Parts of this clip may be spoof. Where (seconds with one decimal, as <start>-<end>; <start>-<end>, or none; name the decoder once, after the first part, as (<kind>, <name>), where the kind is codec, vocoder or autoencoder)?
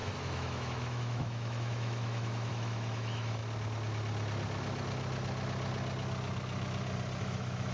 0.0-3.4 (autoencoder, DAC-VAE); 7.2-7.7